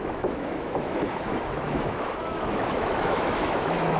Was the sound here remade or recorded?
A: remade